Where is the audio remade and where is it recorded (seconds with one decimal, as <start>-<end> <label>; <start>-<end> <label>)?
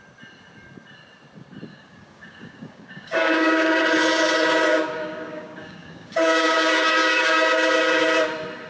0.0-1.7 recorded; 1.7-3.8 remade; 3.8-4.7 recorded; 4.7-7.7 remade; 7.7-8.7 recorded